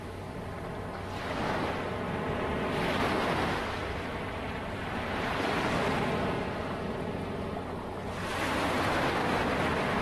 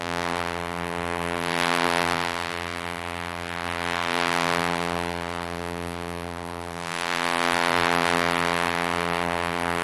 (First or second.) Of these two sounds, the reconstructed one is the second